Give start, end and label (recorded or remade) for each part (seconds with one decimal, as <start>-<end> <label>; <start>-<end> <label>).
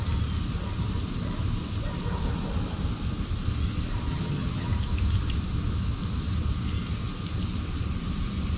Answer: 0.0-4.1 recorded; 4.1-4.7 remade; 4.7-8.6 recorded